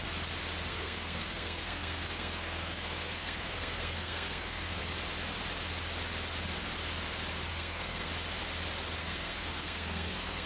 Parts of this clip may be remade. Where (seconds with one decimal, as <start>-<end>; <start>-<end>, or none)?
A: 0.7-4.8; 7.5-8.1; 9.0-10.5